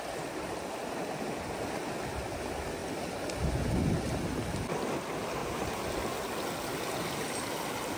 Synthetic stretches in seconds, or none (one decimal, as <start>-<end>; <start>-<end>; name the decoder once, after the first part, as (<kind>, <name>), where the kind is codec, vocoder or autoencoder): none